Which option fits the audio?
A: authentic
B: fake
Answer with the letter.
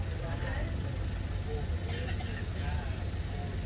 A